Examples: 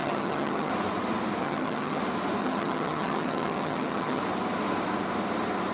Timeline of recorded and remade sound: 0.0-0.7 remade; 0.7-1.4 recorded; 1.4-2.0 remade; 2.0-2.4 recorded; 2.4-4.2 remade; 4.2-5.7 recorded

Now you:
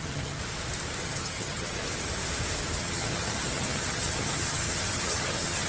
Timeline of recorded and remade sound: 0.0-0.4 remade; 0.4-1.0 recorded; 1.0-1.8 remade; 1.8-2.8 recorded; 2.8-5.7 remade

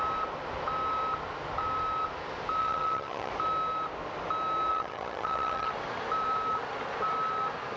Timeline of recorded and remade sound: 0.0-2.6 recorded; 2.6-3.3 remade; 3.3-4.7 recorded; 4.7-5.7 remade; 5.7-7.8 recorded